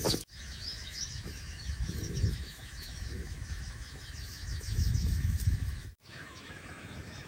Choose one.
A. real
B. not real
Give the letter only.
B